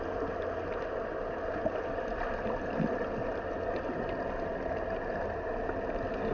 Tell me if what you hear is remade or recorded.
recorded